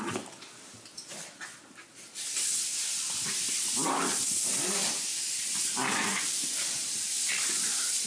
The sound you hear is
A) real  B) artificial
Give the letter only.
A